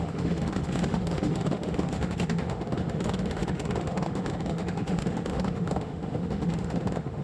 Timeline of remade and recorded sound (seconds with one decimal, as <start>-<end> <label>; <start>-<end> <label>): 0.0-7.2 remade